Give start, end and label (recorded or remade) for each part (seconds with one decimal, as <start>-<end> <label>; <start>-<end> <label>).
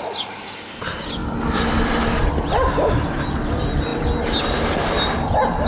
0.0-5.7 recorded